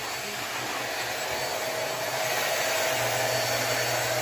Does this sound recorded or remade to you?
recorded